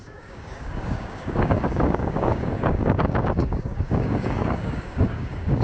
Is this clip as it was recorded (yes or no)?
no